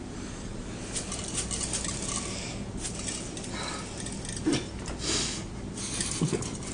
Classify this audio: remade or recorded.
recorded